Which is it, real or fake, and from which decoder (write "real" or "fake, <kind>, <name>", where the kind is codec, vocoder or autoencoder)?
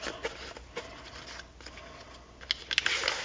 real